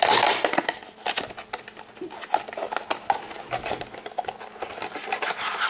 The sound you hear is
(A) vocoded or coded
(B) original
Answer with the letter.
B